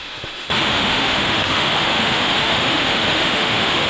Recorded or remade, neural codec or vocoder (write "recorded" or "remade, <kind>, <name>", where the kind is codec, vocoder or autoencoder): remade, autoencoder, DAC-VAE